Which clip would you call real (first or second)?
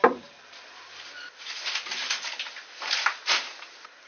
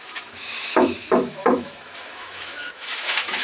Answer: first